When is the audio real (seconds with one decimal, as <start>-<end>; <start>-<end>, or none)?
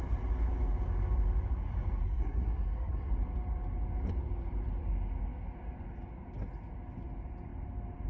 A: 0.0-2.0; 3.1-8.1